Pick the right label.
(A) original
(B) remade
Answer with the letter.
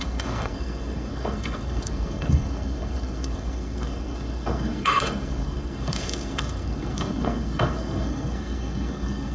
B